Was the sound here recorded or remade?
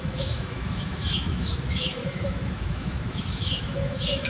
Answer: remade